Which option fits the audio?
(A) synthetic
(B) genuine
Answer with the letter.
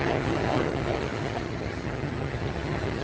A